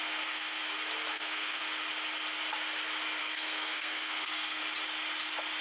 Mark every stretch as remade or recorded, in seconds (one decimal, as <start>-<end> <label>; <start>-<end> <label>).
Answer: 0.0-0.6 remade; 0.6-1.1 recorded; 1.1-1.6 remade; 1.6-3.2 recorded; 3.2-4.6 remade; 4.6-5.6 recorded